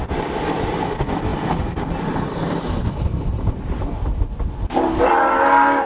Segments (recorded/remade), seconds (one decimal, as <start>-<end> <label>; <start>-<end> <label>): 0.0-5.9 recorded